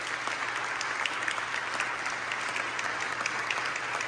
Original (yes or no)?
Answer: yes